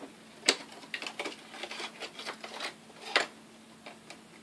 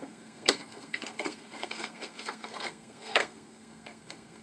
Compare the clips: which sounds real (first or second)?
first